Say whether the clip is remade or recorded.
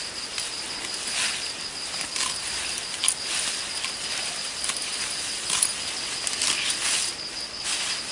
recorded